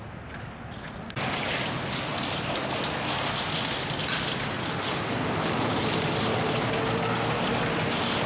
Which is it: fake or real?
real